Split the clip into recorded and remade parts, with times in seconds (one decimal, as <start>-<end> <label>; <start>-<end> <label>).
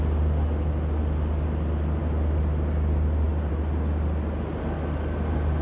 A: 0.0-5.6 recorded